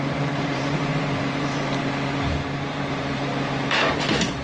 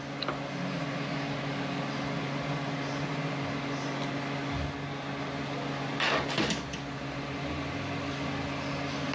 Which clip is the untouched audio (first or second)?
second